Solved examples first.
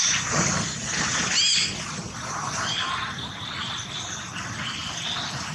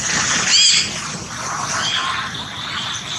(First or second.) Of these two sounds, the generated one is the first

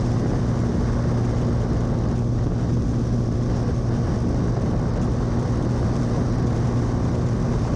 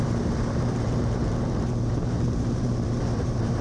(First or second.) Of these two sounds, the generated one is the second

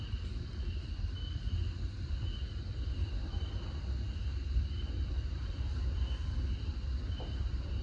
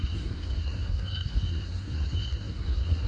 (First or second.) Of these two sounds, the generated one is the second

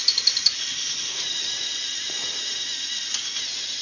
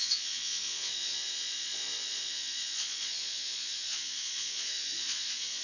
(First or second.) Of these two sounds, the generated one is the second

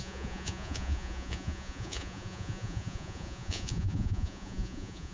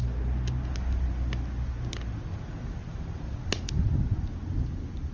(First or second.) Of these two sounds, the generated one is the first